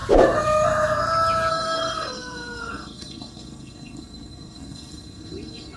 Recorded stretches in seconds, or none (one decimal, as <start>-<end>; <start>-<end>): 0.0-1.5